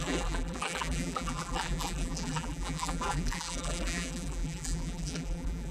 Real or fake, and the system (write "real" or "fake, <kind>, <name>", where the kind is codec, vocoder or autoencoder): fake, vocoder, BigVGAN v2